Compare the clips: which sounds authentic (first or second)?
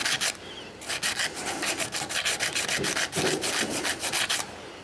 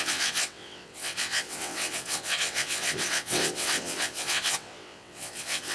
first